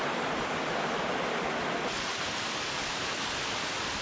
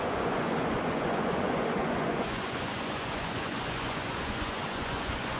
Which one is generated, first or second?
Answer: second